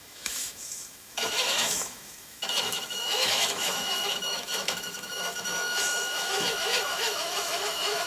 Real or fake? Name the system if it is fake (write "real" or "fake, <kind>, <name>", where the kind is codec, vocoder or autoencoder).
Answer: fake, autoencoder, DAC-VAE